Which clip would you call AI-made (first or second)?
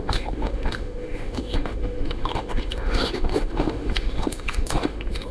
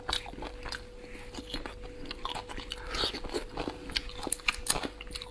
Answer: first